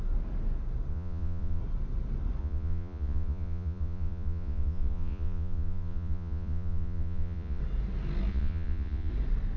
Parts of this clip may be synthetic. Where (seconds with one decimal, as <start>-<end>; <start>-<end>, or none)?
0.9-1.6; 2.4-7.6; 8.3-9.1